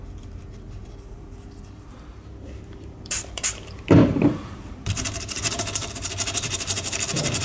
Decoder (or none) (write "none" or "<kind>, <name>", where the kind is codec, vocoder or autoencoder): vocoder, BigVGAN v2